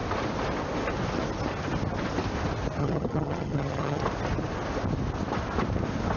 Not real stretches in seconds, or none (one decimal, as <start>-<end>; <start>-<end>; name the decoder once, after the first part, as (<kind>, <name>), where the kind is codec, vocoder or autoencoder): 2.8-4.0 (vocoder, HiFi-GAN)